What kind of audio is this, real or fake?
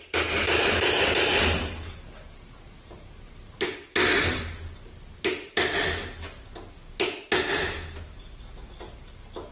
real